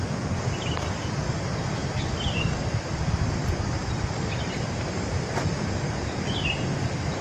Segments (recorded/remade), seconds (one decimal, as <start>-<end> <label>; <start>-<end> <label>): 0.0-7.2 recorded